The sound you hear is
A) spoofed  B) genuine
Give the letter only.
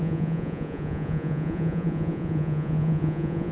A